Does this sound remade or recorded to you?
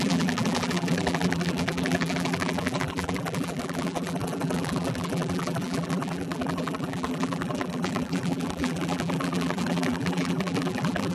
remade